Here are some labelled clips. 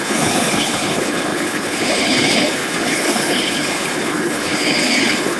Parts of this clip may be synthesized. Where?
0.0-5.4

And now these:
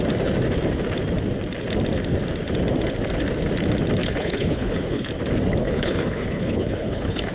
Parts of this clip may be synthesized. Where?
4.0-5.1; 5.6-7.3

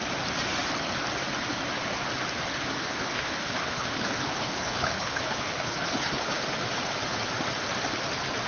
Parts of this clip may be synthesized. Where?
2.8-6.4

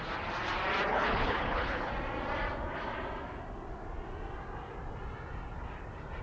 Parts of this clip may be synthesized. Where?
0.9-1.9

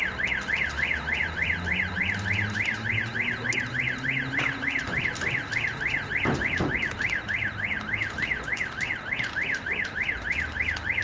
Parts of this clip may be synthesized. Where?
none

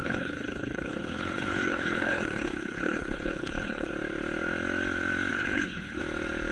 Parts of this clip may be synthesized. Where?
0.0-3.9; 5.3-6.0